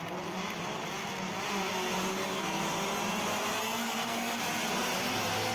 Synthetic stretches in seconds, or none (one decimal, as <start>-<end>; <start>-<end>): 2.1-2.6; 3.6-4.4